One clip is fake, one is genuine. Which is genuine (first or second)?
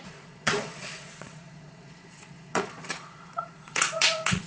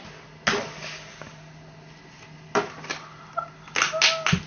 second